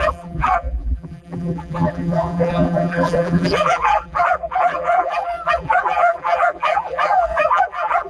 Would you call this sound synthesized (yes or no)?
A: yes